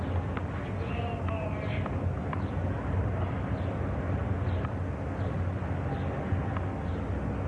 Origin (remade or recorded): recorded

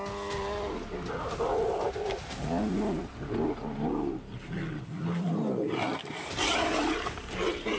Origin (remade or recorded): recorded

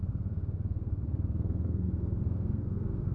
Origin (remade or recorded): remade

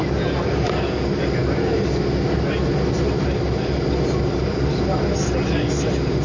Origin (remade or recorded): recorded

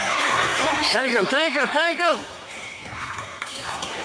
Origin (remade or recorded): remade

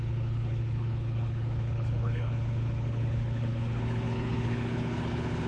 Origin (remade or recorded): remade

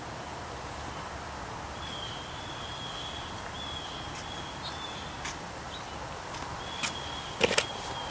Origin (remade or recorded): recorded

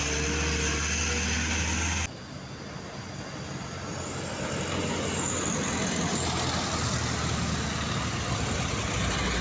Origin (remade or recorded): recorded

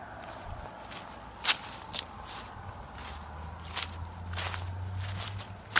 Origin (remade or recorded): recorded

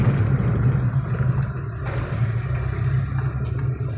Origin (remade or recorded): recorded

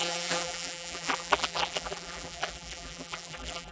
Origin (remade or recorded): remade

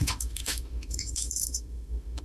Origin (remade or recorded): remade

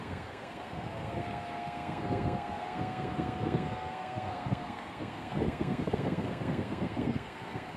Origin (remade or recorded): remade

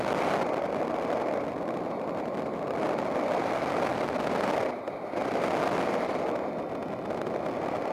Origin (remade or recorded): recorded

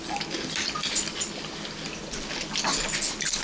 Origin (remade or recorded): recorded